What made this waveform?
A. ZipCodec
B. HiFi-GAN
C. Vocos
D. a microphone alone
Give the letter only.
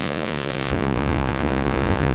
C